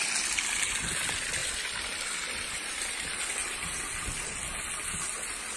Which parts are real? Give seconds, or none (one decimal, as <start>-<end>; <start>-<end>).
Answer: 0.0-5.6

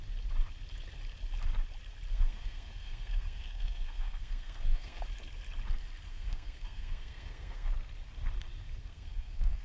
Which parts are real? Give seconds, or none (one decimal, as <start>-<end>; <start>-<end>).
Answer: 0.0-2.1; 5.0-6.1; 7.7-8.8